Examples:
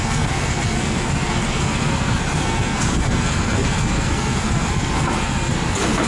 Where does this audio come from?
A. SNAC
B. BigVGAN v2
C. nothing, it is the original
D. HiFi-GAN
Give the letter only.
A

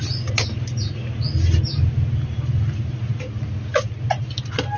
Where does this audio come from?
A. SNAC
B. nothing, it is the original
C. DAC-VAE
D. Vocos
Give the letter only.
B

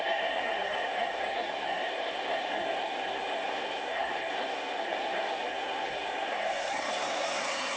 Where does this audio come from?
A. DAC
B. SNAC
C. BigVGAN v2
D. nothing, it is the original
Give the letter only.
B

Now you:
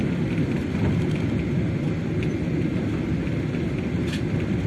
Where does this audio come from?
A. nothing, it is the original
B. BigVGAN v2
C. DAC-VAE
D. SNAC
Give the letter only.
A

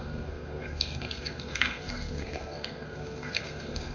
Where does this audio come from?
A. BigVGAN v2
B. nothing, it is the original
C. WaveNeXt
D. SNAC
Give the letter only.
D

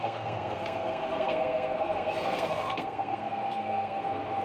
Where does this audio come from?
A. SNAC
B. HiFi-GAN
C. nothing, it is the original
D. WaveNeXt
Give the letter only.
A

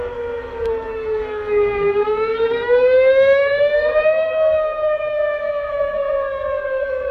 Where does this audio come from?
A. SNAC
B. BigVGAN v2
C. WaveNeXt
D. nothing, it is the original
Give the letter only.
A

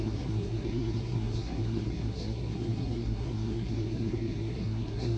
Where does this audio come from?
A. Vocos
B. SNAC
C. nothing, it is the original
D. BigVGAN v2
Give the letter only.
B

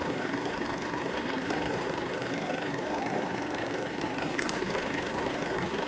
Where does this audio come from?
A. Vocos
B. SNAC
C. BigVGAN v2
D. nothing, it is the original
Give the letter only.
B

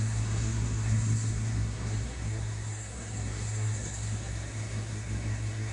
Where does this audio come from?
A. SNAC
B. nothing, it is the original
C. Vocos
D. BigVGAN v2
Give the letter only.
A